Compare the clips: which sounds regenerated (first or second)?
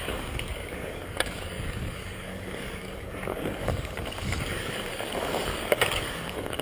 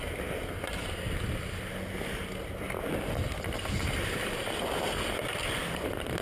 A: first